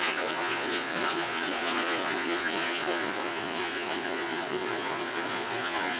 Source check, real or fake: fake